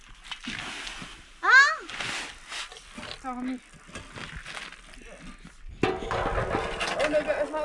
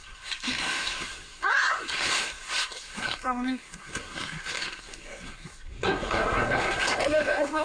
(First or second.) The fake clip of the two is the second